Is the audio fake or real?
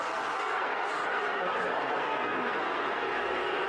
fake